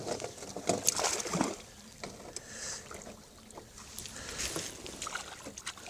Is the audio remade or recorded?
recorded